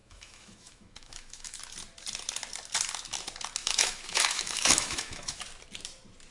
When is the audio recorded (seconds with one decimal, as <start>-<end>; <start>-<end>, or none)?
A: 1.6-3.6; 5.4-6.3